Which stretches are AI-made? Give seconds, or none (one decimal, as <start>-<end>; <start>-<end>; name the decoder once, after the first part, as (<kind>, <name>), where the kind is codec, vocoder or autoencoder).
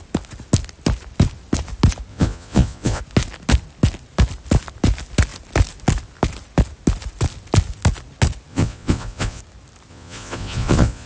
2.1-3.0 (vocoder, Vocos); 8.5-9.4; 9.9-11.1